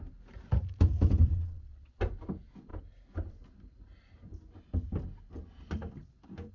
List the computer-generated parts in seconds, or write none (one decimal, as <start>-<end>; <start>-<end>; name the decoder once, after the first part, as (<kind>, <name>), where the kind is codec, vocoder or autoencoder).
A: 1.3-1.9 (vocoder, Vocos)